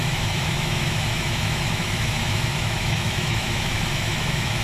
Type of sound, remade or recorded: remade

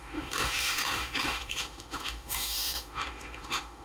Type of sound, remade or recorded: remade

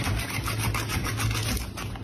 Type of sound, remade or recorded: recorded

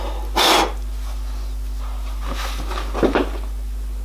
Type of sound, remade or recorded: recorded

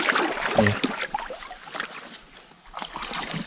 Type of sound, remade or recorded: recorded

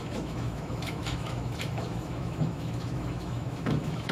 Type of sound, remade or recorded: remade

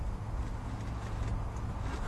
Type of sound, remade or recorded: recorded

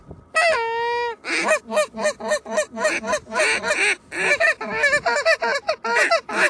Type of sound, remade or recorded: recorded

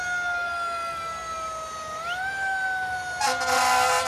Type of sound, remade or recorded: recorded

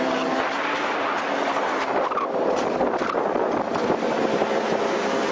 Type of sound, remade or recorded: recorded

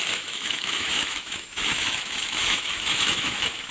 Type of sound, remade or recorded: remade